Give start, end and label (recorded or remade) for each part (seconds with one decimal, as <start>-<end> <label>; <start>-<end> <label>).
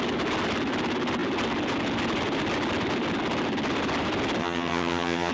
0.0-4.4 recorded; 4.4-5.3 remade